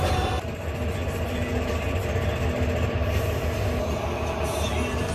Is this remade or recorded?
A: recorded